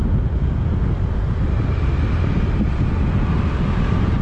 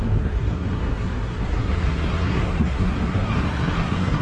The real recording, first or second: first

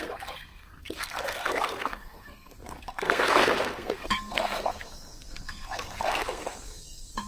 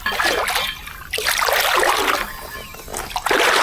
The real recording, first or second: second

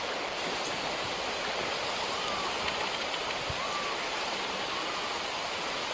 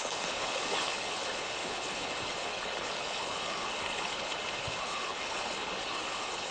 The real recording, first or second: first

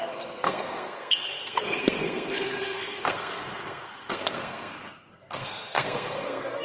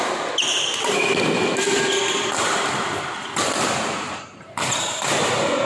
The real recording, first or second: second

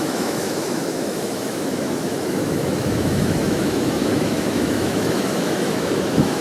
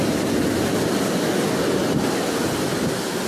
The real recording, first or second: second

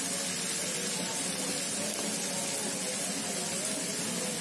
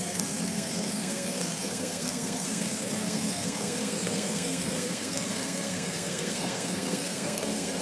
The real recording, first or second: first